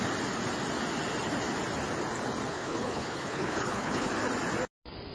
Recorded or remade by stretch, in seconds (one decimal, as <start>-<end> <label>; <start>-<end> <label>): 0.0-2.5 recorded; 2.5-4.1 remade; 4.1-5.1 recorded